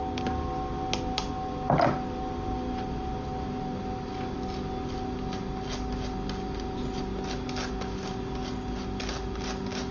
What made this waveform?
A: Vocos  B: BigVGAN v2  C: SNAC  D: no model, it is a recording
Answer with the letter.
D